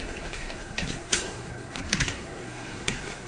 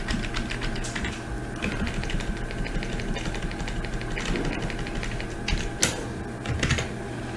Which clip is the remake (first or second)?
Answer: first